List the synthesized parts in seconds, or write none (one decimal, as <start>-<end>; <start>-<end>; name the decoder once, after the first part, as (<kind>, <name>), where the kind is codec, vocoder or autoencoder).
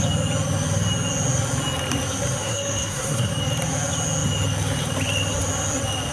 2.4-3.3 (codec, SNAC)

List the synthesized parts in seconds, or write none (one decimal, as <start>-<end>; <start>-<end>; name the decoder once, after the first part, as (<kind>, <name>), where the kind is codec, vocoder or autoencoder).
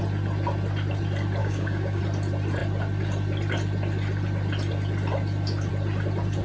1.4-2.0 (codec, DAC)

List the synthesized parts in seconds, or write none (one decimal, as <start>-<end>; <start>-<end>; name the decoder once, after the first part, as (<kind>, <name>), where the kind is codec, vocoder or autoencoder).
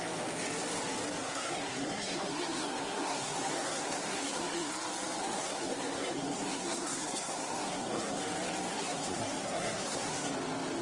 1.2-4.7 (codec, SNAC); 5.2-8.2; 8.7-10.3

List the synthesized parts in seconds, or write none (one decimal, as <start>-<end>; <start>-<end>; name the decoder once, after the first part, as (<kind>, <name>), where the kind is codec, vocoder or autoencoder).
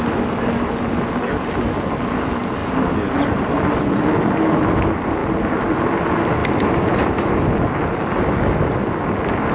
none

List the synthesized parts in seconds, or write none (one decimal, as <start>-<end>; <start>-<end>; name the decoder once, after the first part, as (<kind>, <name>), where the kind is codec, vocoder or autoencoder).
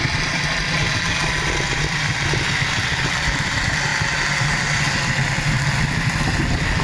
0.0-3.9 (vocoder, BigVGAN v2); 4.5-6.8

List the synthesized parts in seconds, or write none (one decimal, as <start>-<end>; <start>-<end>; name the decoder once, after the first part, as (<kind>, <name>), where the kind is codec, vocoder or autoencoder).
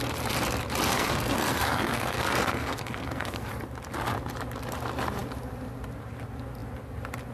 0.9-3.5 (codec, SNAC)